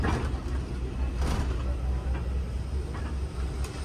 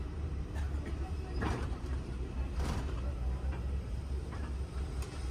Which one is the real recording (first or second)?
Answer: first